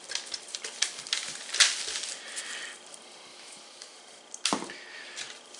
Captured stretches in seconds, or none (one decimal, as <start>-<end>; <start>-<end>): 0.0-3.3; 4.0-5.6